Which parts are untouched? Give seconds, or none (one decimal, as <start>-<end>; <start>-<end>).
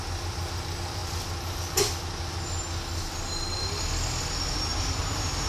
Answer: 0.0-5.5